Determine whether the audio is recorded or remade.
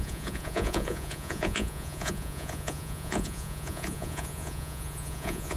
remade